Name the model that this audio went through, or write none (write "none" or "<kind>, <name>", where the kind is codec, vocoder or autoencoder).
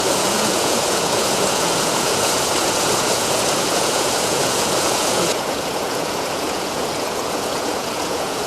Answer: vocoder, Vocos